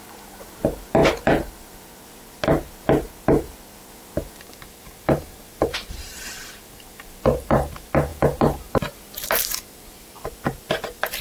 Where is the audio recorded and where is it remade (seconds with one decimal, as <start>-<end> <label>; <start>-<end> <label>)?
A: 0.0-11.2 remade